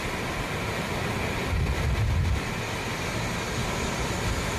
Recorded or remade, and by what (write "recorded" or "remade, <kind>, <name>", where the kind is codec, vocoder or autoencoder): recorded